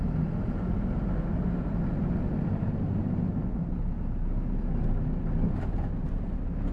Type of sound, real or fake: real